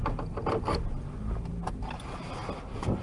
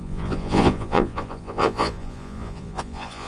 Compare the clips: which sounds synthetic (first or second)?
second